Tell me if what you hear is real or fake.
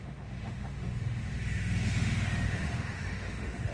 fake